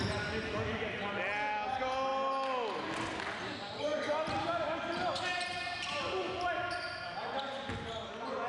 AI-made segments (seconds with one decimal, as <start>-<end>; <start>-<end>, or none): none